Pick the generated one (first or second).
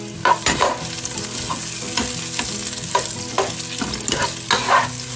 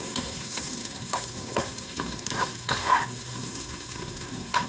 second